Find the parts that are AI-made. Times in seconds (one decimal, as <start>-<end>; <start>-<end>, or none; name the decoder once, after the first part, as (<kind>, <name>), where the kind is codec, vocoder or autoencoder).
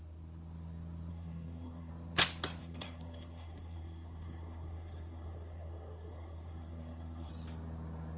1.1-1.9 (codec, SNAC); 2.6-7.3